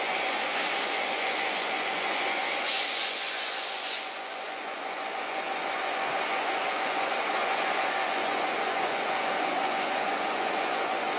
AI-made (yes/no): yes